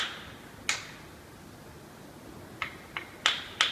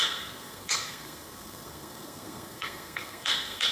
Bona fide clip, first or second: first